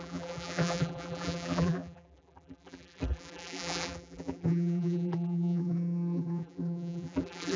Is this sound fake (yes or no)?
yes